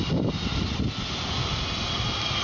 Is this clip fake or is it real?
real